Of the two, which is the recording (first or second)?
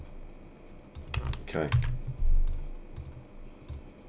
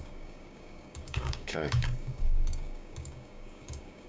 first